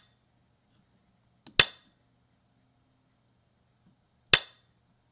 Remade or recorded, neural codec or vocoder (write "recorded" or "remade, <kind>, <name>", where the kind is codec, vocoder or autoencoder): recorded